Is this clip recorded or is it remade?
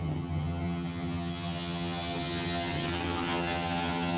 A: remade